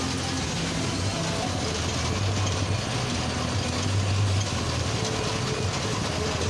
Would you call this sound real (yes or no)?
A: yes